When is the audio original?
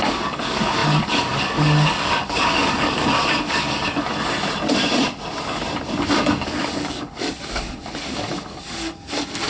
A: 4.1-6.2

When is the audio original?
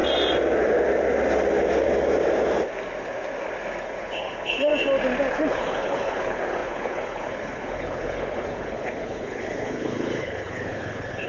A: 0.0-3.8; 4.7-5.3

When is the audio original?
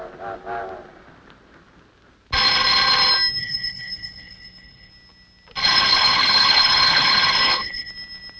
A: 0.0-3.4; 4.9-5.6; 7.9-8.4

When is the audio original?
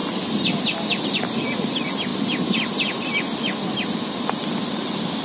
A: 0.6-5.2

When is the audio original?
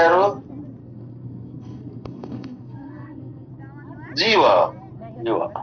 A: 0.0-0.8; 3.5-5.6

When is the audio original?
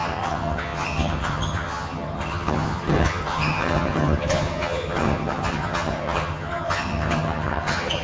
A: none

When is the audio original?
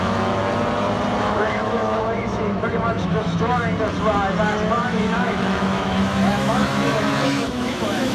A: 0.4-1.2; 3.6-4.7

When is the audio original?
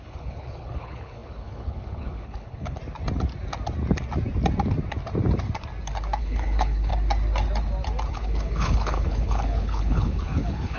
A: 2.8-6.2; 6.9-8.1